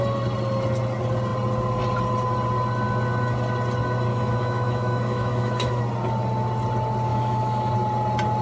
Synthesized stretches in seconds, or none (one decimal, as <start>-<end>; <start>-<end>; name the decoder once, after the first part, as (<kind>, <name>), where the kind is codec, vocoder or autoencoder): 4.1-5.8 (autoencoder, DAC-VAE); 7.1-7.7